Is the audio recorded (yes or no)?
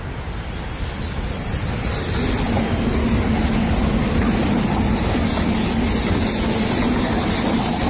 yes